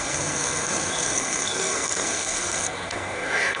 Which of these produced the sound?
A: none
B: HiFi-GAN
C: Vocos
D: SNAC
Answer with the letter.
D